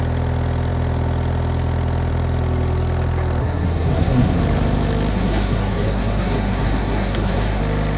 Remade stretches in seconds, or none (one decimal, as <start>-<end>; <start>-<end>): 3.4-4.4; 5.1-7.6